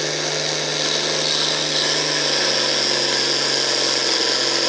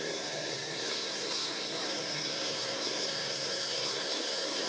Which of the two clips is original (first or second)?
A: first